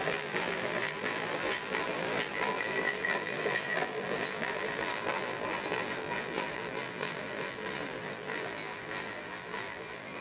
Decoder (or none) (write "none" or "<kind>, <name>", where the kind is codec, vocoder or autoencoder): vocoder, BigVGAN v2